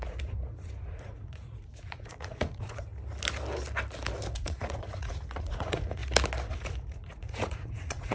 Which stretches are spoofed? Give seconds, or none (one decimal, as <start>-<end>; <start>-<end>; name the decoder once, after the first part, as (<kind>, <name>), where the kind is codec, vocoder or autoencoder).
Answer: 0.0-2.9 (vocoder, Vocos); 4.3-6.0; 6.5-8.1